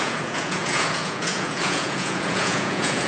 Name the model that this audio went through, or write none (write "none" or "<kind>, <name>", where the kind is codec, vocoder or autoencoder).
vocoder, Vocos